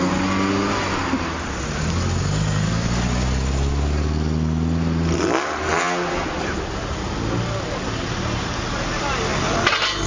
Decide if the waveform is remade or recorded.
recorded